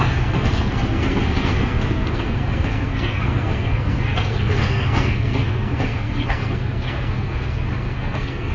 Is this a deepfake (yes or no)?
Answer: yes